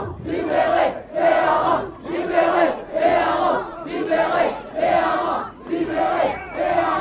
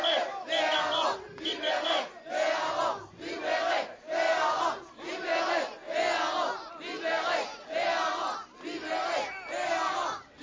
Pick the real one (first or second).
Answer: second